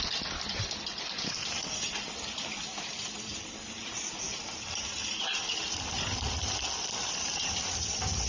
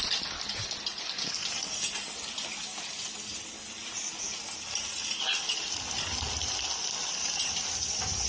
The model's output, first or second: first